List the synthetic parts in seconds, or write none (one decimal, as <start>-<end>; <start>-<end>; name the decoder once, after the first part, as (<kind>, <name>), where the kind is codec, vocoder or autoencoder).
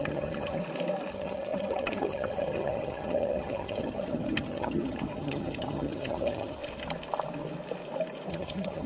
0.0-0.6 (vocoder, HiFi-GAN); 1.1-6.6; 8.3-8.9